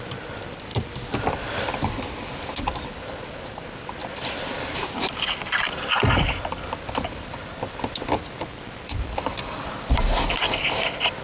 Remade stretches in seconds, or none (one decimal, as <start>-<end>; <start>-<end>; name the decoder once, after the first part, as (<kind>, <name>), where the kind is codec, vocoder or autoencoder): 0.0-11.2 (vocoder, BigVGAN v2)